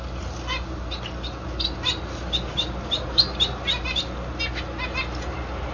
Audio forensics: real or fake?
real